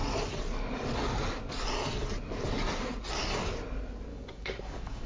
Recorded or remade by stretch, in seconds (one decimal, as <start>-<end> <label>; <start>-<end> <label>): 0.0-4.1 recorded; 4.1-5.1 remade